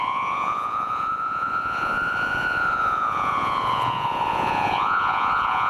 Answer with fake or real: fake